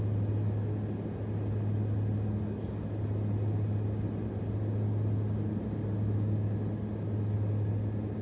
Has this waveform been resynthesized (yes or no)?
no